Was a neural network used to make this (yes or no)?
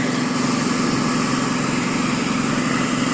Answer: no